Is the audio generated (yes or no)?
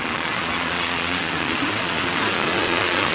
yes